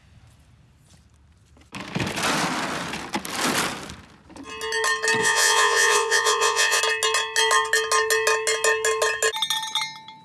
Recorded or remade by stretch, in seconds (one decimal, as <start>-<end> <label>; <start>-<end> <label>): 0.0-5.2 recorded; 5.2-6.8 remade; 6.8-10.2 recorded